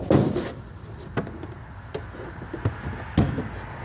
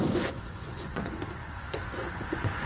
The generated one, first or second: second